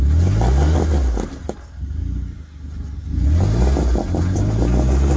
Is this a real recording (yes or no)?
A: yes